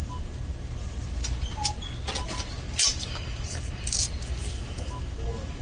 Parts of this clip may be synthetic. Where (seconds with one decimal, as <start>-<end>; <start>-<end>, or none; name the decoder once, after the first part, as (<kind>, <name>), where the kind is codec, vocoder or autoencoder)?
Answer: 0.0-2.4 (vocoder, BigVGAN v2)